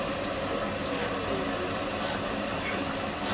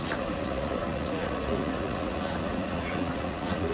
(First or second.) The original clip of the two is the first